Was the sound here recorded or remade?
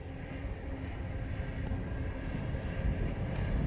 recorded